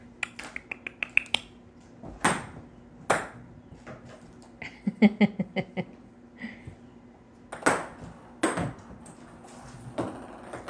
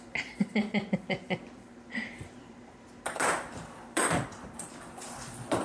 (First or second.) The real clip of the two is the first